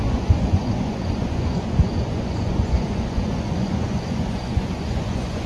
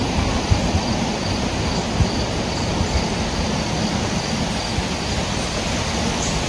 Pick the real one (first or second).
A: second